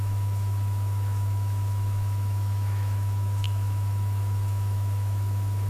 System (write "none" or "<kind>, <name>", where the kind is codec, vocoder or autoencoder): autoencoder, DAC-VAE